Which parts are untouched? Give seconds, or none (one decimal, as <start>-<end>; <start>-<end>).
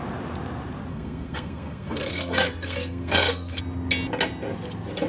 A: 0.0-0.9; 3.6-5.1